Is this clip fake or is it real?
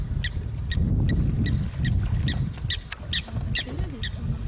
real